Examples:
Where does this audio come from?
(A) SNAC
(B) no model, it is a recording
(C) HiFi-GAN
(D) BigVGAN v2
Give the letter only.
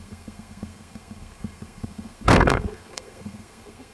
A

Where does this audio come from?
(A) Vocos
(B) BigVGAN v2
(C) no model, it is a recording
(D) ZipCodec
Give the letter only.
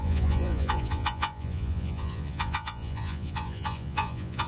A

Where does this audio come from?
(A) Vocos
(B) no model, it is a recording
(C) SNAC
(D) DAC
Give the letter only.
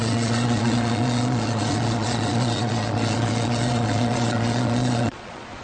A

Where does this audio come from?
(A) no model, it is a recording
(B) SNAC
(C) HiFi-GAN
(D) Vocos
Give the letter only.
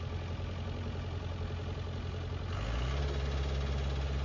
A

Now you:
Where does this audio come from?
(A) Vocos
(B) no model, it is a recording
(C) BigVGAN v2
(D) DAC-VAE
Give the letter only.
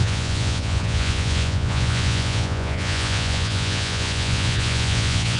A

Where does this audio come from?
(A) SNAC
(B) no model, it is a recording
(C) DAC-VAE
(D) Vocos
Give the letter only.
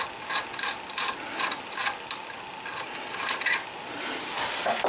B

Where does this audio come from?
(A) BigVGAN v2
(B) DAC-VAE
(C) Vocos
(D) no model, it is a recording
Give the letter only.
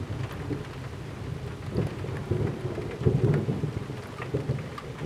D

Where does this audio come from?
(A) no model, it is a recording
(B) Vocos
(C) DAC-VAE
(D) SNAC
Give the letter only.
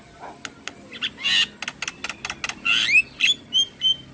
A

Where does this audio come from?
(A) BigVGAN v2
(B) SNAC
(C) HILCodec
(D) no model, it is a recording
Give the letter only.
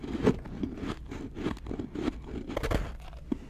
D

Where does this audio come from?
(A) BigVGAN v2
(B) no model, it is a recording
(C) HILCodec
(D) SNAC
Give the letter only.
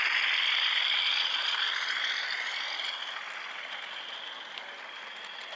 B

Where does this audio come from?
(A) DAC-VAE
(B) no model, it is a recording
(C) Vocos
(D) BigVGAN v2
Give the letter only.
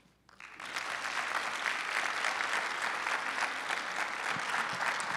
B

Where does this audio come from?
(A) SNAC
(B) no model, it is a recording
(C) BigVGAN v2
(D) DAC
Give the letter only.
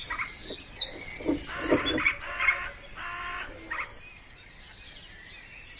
B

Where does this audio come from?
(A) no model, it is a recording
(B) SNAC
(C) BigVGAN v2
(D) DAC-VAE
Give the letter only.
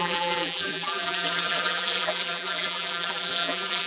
C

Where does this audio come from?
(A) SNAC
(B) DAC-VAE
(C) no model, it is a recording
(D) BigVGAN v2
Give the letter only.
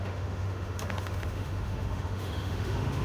B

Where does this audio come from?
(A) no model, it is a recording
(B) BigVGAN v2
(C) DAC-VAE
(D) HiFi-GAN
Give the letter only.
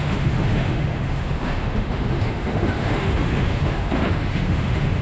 C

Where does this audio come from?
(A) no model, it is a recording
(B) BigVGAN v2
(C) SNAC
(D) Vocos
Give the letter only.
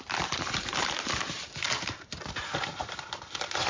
B